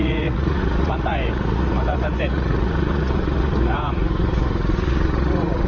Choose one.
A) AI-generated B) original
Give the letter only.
A